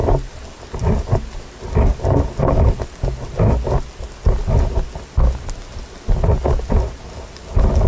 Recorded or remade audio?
recorded